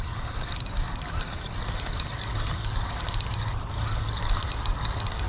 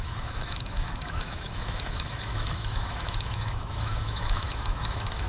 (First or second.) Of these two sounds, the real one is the first